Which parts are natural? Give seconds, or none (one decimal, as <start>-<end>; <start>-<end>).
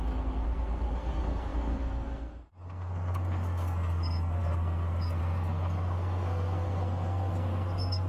none